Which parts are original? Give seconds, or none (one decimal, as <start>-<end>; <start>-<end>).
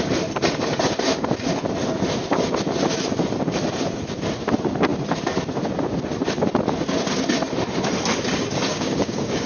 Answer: 0.0-8.7